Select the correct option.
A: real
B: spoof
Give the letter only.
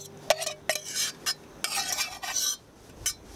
A